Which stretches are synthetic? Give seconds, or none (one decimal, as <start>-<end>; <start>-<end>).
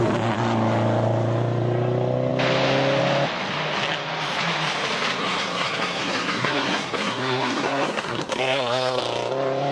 5.2-9.0